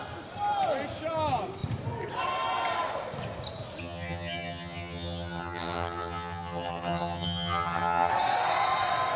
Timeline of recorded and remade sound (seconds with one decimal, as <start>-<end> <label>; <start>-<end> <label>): 0.0-3.8 recorded; 3.8-8.1 remade; 8.1-9.2 recorded